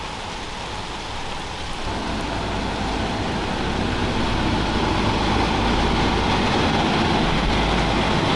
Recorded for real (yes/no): yes